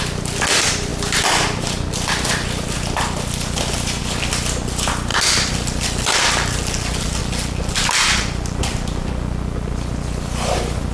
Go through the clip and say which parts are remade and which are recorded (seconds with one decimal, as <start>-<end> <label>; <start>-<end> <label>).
0.0-5.1 recorded; 5.1-9.1 remade; 9.1-10.9 recorded